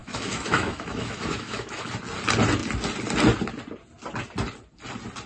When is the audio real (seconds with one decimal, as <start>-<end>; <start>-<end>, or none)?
1.9-5.3